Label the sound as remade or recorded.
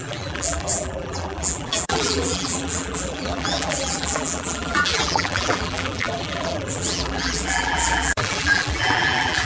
remade